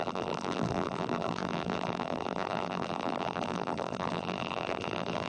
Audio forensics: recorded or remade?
remade